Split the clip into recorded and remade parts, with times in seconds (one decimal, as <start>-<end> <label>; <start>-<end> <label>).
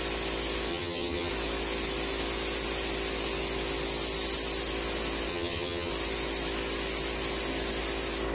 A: 0.0-0.7 recorded; 0.7-1.3 remade; 1.3-5.3 recorded; 5.3-5.9 remade; 5.9-8.3 recorded